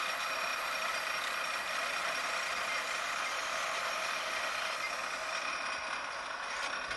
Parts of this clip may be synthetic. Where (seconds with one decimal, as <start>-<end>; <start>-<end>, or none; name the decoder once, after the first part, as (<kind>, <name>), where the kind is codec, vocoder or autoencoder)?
0.5-3.9 (vocoder, BigVGAN v2)